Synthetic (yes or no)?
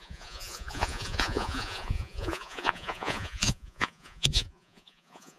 yes